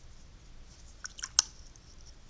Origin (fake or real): real